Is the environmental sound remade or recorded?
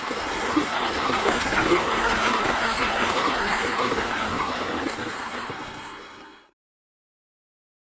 remade